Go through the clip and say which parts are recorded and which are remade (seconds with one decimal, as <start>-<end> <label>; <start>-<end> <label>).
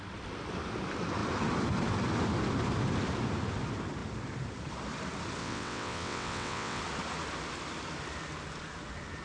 0.0-5.4 recorded; 5.4-6.8 remade; 6.8-9.2 recorded